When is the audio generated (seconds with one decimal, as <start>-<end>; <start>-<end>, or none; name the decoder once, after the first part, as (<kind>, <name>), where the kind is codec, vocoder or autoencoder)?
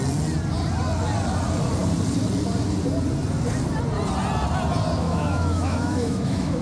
5.0-6.6 (autoencoder, DAC-VAE)